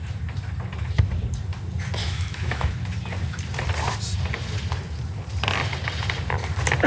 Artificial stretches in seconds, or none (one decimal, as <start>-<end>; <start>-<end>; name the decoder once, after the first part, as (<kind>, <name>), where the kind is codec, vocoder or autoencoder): 2.0-2.7 (autoencoder, DAC-VAE)

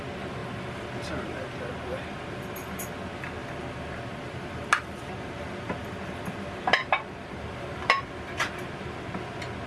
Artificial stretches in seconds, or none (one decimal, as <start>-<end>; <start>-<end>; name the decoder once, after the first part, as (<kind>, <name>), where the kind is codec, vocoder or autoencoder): none

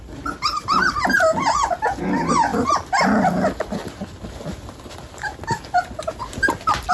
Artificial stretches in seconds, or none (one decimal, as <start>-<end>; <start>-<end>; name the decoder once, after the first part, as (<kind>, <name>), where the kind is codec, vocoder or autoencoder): none

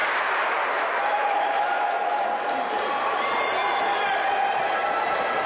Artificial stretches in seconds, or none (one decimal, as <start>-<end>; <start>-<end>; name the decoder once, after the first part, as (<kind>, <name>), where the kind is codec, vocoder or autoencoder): 1.2-2.2 (autoencoder, DAC-VAE)

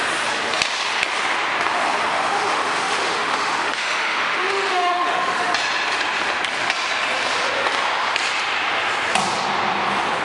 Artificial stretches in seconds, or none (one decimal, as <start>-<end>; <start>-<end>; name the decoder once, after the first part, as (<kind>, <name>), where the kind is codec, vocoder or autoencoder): 2.1-5.5 (autoencoder, DAC-VAE)

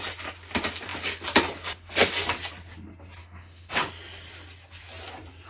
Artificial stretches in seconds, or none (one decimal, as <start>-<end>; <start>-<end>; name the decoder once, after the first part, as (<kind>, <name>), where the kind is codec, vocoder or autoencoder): 3.2-3.9 (autoencoder, DAC-VAE)

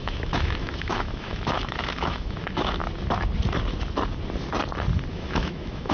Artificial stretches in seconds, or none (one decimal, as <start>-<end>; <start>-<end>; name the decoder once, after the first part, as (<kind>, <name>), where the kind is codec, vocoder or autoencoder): 0.0-2.8 (autoencoder, DAC-VAE); 5.1-5.9